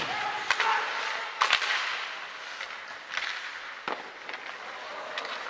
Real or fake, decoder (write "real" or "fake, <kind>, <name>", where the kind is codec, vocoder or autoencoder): real